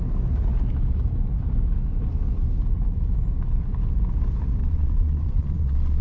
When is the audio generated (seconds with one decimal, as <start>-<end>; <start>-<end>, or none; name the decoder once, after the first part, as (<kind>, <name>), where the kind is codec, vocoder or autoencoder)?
4.6-6.0 (vocoder, Vocos)